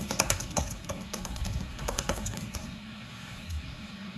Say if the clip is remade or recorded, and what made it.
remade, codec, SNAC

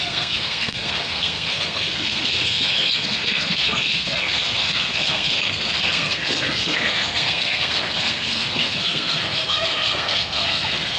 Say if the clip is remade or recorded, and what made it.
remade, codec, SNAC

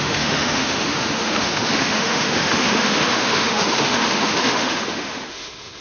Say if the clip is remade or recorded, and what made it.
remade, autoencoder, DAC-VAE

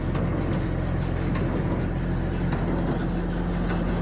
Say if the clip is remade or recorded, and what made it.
recorded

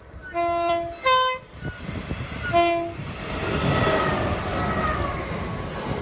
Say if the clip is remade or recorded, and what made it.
recorded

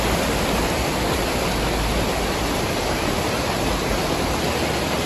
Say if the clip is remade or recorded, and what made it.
recorded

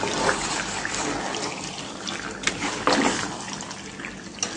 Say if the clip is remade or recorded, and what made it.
recorded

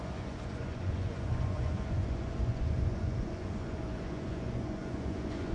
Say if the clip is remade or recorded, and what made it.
remade, vocoder, Vocos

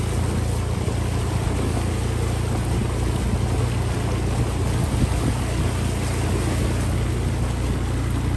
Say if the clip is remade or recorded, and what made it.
recorded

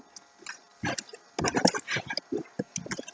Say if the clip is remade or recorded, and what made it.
recorded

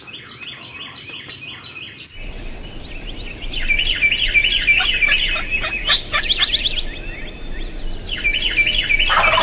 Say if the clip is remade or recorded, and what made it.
recorded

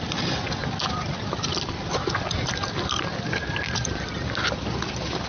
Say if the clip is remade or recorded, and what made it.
recorded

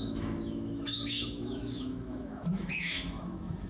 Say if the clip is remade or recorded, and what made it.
remade, autoencoder, DAC-VAE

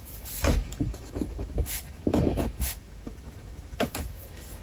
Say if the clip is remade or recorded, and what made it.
remade, autoencoder, DAC-VAE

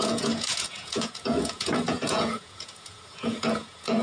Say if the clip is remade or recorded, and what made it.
remade, vocoder, Vocos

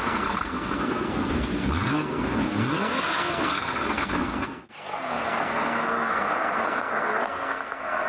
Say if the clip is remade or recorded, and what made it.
remade, codec, SNAC